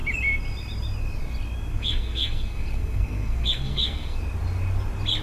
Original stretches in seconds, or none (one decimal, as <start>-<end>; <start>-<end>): 0.0-1.7; 4.2-5.2